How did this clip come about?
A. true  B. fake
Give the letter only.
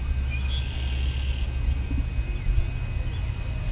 A